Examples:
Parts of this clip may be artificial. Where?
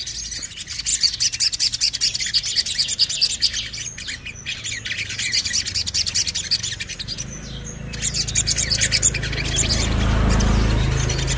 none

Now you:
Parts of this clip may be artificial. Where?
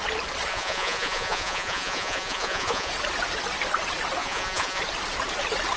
0.5-2.9 (vocoder, Vocos); 4.2-4.8